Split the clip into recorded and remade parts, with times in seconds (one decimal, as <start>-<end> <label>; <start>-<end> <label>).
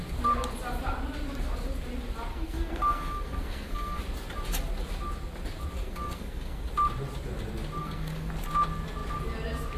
0.0-2.3 recorded; 2.3-4.0 remade; 4.0-5.8 recorded; 5.8-6.7 remade; 6.7-7.8 recorded; 7.8-8.3 remade; 8.3-9.8 recorded